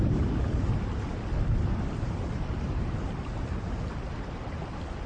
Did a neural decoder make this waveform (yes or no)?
no